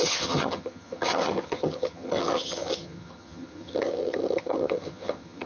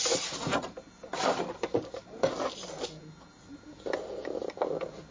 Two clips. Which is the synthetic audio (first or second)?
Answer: first